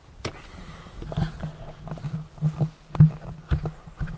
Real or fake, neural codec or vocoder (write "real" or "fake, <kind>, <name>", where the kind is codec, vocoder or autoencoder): real